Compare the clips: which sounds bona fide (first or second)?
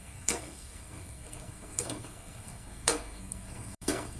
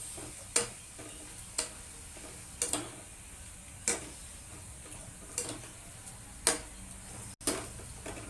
second